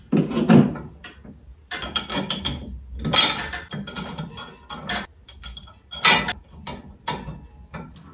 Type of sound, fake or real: real